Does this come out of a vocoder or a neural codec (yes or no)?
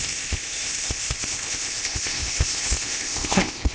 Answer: yes